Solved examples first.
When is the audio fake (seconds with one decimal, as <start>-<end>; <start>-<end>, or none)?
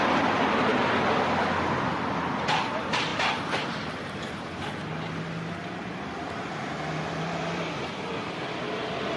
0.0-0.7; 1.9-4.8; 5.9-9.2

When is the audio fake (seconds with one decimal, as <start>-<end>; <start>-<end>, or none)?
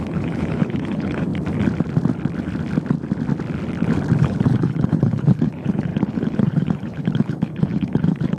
0.0-1.3; 4.2-8.4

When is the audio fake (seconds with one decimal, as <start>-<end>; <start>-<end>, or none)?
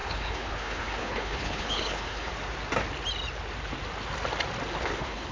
0.0-2.3; 4.8-5.3